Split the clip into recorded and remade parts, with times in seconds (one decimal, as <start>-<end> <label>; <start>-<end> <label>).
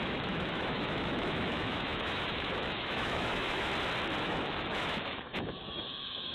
0.0-3.7 remade; 3.7-4.2 recorded; 4.2-6.3 remade